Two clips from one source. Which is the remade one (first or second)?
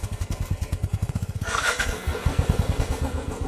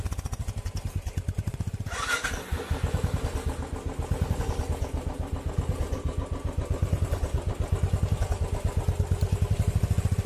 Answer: first